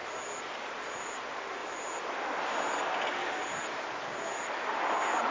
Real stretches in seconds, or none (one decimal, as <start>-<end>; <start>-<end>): 0.0-5.3